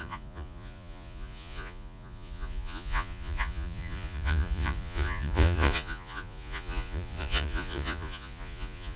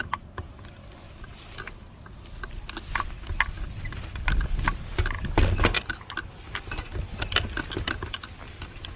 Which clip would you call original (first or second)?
second